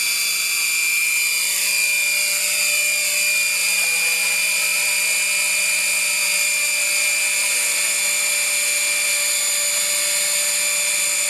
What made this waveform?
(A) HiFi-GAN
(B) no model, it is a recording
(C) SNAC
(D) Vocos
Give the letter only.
B